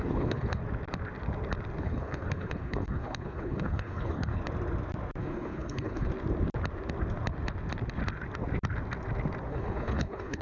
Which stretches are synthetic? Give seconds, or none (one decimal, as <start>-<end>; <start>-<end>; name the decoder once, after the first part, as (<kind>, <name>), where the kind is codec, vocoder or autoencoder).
0.0-0.6 (codec, HILCodec); 1.8-4.4; 5.2-6.1; 9.5-10.4